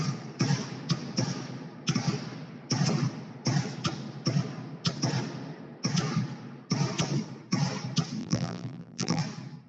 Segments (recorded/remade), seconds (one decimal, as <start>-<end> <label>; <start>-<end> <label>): 0.0-8.2 recorded; 8.2-9.2 remade; 9.2-9.7 recorded